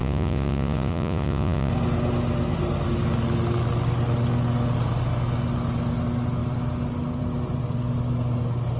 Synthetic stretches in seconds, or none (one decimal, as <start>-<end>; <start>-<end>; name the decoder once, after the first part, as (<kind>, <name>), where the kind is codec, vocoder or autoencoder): 0.0-1.7 (vocoder, Vocos)